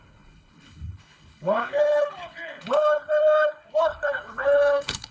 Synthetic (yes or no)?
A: yes